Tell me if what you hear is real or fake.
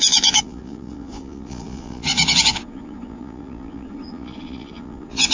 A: fake